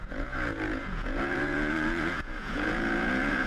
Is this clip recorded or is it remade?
remade